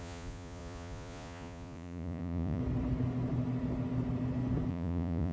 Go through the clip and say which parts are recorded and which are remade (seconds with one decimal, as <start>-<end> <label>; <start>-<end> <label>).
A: 0.0-2.6 remade; 2.6-4.7 recorded; 4.7-5.3 remade